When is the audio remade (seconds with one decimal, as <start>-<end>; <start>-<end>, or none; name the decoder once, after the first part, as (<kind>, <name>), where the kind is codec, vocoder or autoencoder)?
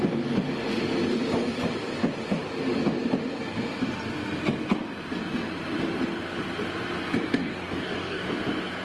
7.4-8.3 (codec, DAC)